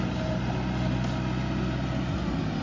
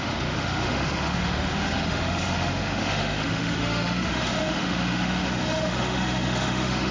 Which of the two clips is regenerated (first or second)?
second